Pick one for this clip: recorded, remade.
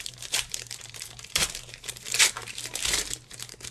remade